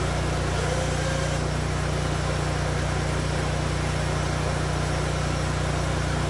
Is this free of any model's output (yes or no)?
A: yes